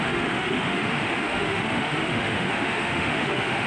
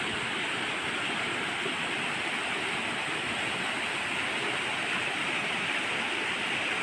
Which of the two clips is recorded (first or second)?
second